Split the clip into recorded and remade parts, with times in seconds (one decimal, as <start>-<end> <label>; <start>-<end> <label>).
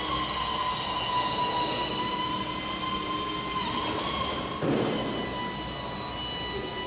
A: 0.0-6.9 recorded